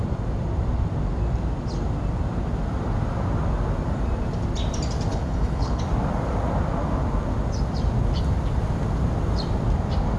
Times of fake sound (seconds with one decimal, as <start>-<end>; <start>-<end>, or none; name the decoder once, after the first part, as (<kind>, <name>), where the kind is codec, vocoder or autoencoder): 5.1-5.8 (codec, HILCodec)

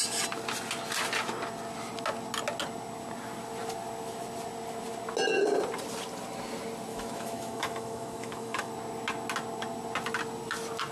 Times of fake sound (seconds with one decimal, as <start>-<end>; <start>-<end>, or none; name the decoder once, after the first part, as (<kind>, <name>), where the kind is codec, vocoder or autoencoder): 6.9-8.7 (autoencoder, DAC-VAE)